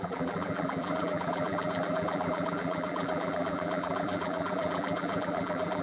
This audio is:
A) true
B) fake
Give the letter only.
B